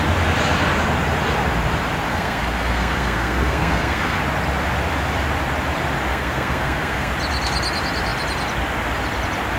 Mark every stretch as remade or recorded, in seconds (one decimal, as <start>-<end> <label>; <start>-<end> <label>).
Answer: 0.0-2.1 recorded; 2.1-4.2 remade; 4.2-6.1 recorded; 6.1-7.1 remade; 7.1-9.6 recorded

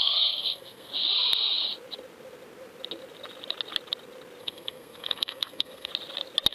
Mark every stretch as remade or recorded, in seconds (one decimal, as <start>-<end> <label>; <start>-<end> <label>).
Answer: 0.0-0.9 remade; 0.9-4.4 recorded; 4.4-5.9 remade; 5.9-6.5 recorded

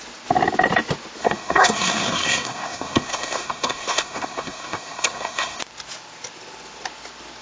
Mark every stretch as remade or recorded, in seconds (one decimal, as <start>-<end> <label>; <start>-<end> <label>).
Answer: 0.0-1.2 recorded; 1.2-5.6 remade; 5.6-7.4 recorded

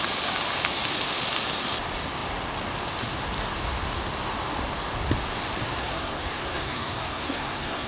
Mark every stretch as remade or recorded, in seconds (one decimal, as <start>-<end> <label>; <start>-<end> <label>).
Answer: 0.0-5.8 recorded; 5.8-7.9 remade

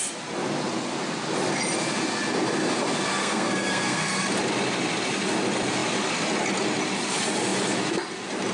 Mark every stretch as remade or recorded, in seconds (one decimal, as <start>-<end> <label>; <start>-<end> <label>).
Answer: 0.0-3.2 recorded; 3.2-4.2 remade; 4.2-8.5 recorded

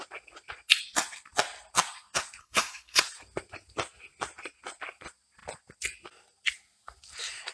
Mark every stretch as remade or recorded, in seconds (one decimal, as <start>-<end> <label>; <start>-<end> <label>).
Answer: 0.0-2.4 recorded; 2.4-3.0 remade; 3.0-7.5 recorded

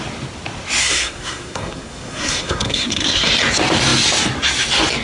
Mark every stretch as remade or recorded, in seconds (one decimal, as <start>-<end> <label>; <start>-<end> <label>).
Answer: 0.0-0.8 recorded; 0.8-3.3 remade; 3.3-5.0 recorded